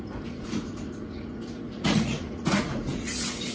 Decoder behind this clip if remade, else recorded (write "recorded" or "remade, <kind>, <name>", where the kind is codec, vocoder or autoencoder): remade, vocoder, Vocos